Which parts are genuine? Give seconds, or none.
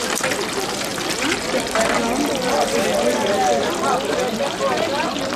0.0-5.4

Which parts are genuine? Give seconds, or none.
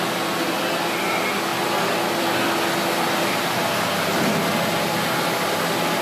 0.0-6.0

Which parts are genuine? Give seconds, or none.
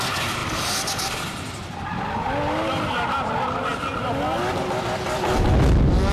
0.0-0.4; 0.9-6.1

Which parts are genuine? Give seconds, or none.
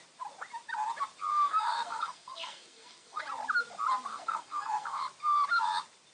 0.0-1.3; 3.2-4.1; 5.0-6.1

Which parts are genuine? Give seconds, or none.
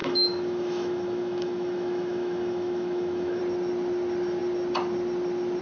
3.4-5.6